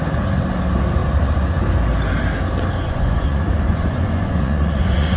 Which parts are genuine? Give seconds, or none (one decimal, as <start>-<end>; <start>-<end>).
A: 0.0-2.8